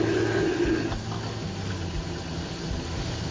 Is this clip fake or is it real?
real